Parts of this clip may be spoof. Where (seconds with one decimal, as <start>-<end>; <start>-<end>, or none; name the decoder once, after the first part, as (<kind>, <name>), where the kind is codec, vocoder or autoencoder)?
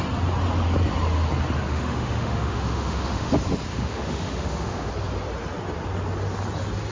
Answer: 1.7-3.3 (autoencoder, DAC-VAE); 3.7-4.9